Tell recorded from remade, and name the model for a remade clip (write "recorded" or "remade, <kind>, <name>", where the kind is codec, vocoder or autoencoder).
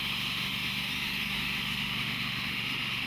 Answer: remade, autoencoder, DAC-VAE